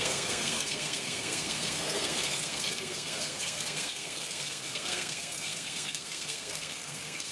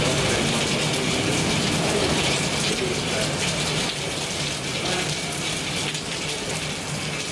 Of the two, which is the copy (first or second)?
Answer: first